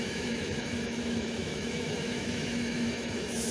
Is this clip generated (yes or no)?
yes